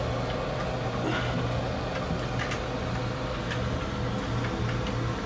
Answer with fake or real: real